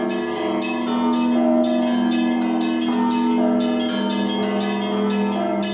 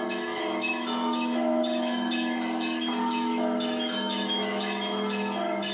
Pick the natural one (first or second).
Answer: first